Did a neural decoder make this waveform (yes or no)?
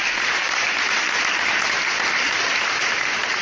no